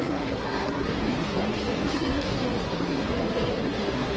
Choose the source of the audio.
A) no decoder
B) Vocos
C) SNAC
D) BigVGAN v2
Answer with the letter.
C